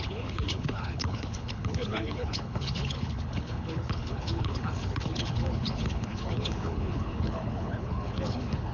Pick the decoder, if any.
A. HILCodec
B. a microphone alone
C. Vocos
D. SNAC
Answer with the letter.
A